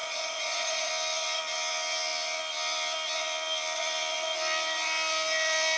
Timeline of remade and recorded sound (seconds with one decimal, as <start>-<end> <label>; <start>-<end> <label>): 0.0-0.9 remade; 0.9-5.8 recorded